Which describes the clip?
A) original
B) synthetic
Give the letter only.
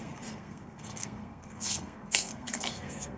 B